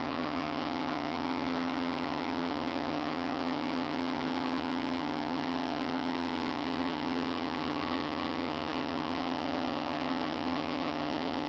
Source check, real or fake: fake